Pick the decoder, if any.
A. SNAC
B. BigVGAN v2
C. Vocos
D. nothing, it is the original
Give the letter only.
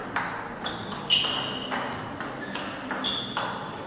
D